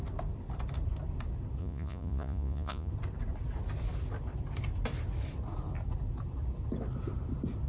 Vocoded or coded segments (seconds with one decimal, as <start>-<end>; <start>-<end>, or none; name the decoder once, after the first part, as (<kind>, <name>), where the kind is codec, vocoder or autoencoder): 1.6-2.9 (vocoder, Vocos)